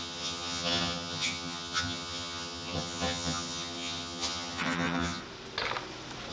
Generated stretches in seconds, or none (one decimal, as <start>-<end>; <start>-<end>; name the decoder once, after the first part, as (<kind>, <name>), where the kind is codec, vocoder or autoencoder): 0.0-5.2 (vocoder, HiFi-GAN)